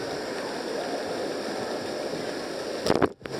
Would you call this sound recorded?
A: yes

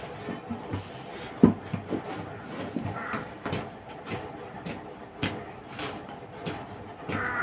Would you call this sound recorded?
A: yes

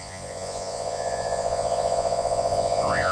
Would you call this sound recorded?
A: no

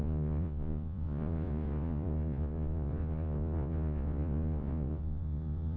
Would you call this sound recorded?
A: no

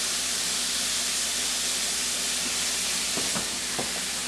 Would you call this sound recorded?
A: yes